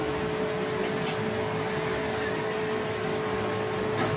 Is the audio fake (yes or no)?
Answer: no